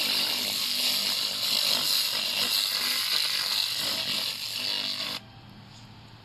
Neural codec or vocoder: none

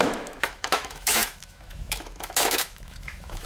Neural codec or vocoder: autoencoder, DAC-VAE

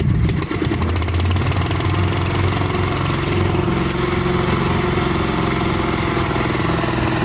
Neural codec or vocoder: none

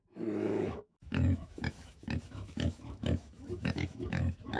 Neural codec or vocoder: autoencoder, DAC-VAE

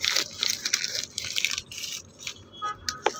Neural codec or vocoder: none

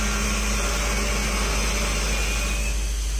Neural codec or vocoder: none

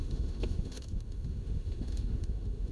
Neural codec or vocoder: autoencoder, DAC-VAE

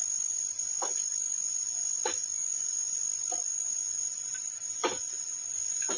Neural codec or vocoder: none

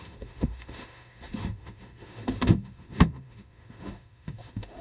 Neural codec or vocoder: autoencoder, DAC-VAE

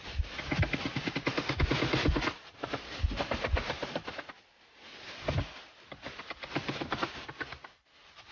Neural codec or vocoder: none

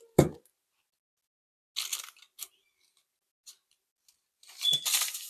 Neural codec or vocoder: none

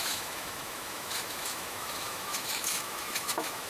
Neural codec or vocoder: autoencoder, DAC-VAE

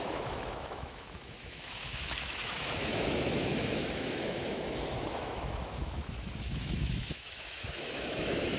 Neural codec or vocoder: autoencoder, DAC-VAE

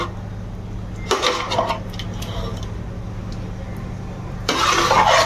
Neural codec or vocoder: none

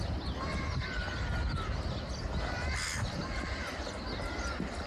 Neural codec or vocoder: none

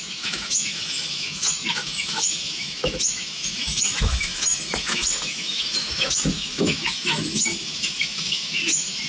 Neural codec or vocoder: autoencoder, DAC-VAE